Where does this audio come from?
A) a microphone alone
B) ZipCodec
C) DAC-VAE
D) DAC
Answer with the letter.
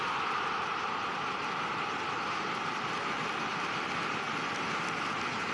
A